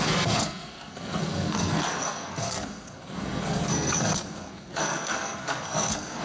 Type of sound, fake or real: fake